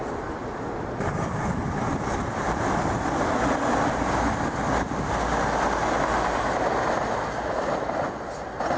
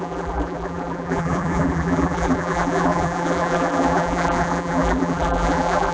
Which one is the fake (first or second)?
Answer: second